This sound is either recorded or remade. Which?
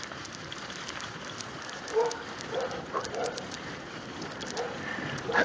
remade